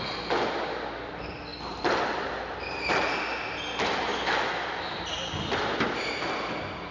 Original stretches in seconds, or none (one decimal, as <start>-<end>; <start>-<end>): 0.0-6.9